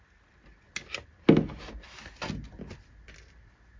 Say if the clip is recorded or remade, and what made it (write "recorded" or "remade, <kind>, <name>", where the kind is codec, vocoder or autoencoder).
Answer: recorded